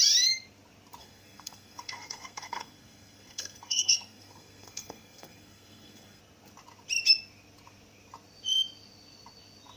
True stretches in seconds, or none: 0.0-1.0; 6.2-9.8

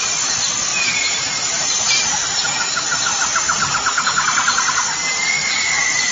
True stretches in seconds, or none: 0.0-0.7; 2.6-3.1; 4.0-6.1

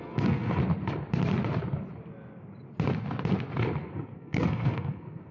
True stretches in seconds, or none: 0.6-3.8

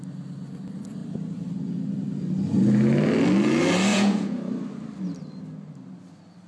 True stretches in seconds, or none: 0.0-3.9; 4.4-6.5